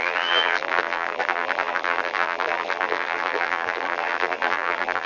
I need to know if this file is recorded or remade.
remade